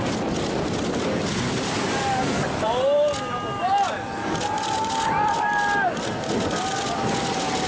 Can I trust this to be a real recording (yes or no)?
yes